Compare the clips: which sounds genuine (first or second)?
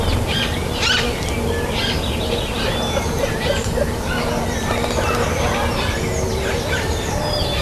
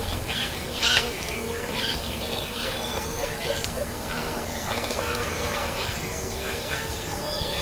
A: first